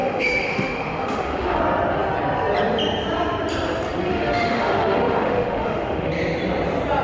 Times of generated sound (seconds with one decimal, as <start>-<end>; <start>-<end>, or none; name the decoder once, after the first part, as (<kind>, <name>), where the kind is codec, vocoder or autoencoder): 0.0-1.6 (autoencoder, DAC-VAE); 4.1-6.1